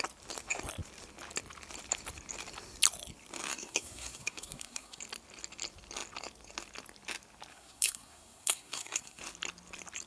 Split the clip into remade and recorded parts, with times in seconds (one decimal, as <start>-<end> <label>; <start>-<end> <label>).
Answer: 0.0-3.5 recorded; 3.5-5.0 remade; 5.0-7.5 recorded; 7.5-9.2 remade; 9.2-10.1 recorded